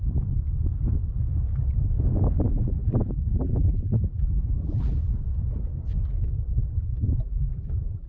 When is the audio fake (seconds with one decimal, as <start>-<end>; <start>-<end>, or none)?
2.5-5.1; 6.6-8.1